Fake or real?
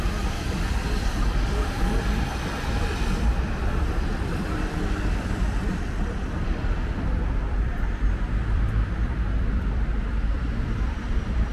fake